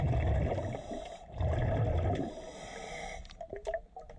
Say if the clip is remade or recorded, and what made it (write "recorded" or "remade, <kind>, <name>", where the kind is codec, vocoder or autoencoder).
recorded